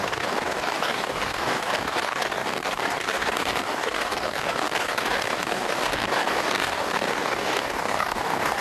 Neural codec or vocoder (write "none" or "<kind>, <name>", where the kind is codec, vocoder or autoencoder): codec, DAC